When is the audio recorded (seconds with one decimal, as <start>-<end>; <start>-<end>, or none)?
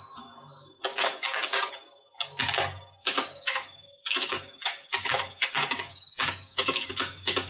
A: 0.0-0.9; 1.7-3.0